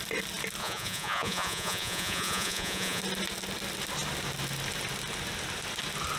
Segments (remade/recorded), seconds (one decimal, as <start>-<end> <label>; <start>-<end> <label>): 0.0-0.6 recorded; 0.6-3.0 remade; 3.0-6.2 recorded